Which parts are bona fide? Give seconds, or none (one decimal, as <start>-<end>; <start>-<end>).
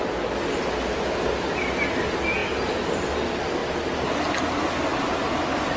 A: 0.0-5.8